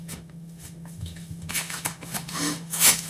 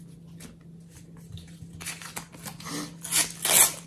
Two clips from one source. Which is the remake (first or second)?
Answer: first